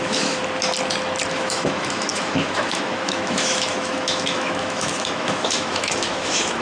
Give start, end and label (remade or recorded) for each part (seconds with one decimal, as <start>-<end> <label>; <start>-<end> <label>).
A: 0.0-0.4 remade; 0.4-1.3 recorded; 1.3-6.6 remade